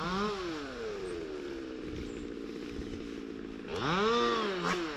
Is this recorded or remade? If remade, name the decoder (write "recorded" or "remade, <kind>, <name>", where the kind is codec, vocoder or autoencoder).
recorded